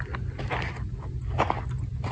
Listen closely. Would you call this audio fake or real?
real